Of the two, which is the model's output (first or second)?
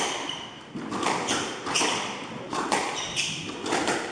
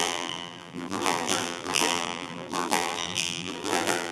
second